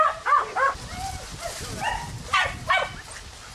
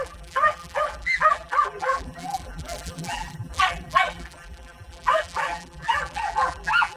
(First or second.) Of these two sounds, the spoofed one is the second